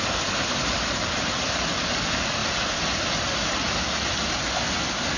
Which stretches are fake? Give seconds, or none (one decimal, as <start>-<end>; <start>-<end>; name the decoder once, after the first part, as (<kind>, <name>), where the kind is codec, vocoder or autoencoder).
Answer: none